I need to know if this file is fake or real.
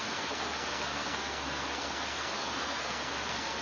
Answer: fake